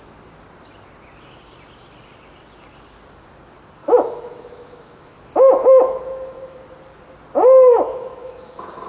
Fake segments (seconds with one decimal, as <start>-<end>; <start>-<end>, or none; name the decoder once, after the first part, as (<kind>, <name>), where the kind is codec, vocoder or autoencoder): 3.8-6.6 (autoencoder, DAC-VAE); 7.7-8.9

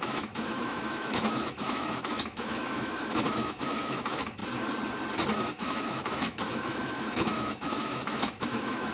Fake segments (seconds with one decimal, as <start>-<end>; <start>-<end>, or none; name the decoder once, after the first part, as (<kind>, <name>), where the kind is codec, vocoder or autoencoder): 0.0-4.4 (autoencoder, DAC-VAE); 5.5-8.9

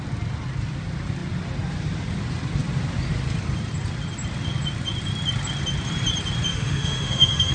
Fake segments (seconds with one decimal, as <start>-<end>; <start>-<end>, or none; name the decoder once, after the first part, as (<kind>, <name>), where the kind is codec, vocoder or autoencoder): 6.5-7.5 (autoencoder, DAC-VAE)

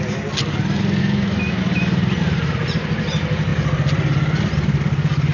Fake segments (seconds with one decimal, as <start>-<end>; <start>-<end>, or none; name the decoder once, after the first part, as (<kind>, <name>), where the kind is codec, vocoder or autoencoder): 1.0-1.6 (autoencoder, DAC-VAE)

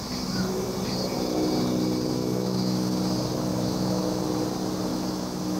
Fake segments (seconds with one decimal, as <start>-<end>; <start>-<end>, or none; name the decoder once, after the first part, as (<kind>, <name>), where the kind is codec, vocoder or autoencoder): 2.2-2.9 (autoencoder, DAC-VAE); 3.5-4.2; 4.9-5.6

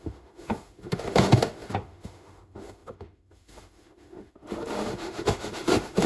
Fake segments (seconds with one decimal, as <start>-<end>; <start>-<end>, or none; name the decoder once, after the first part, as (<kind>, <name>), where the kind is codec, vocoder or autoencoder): 0.0-6.1 (autoencoder, DAC-VAE)

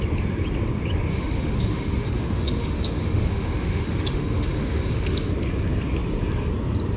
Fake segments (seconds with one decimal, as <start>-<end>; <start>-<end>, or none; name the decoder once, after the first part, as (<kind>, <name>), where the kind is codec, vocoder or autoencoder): 1.1-5.3 (autoencoder, DAC-VAE)